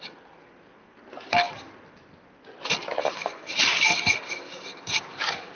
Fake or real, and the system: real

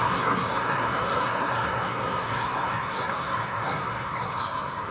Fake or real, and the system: fake, codec, SNAC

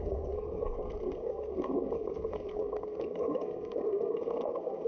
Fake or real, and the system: fake, codec, SNAC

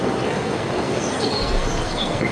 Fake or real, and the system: fake, codec, SNAC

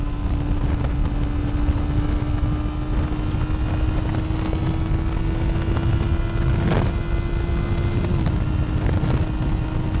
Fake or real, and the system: real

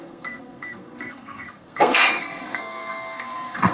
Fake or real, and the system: fake, codec, SNAC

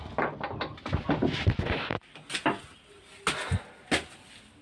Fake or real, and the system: real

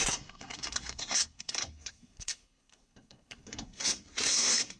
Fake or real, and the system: fake, codec, SNAC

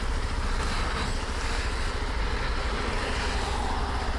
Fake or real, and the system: real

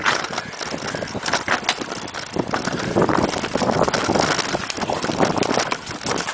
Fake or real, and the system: real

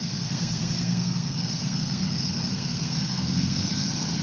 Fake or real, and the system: fake, codec, SNAC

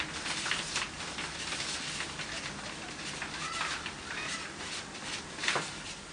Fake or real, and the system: real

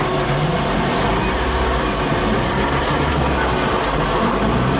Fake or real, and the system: real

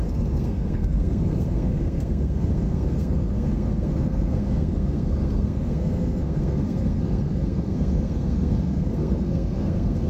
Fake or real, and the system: fake, codec, SNAC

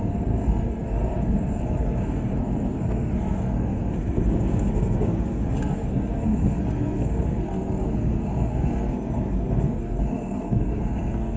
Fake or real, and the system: fake, codec, SNAC